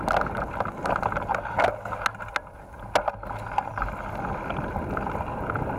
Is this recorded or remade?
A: recorded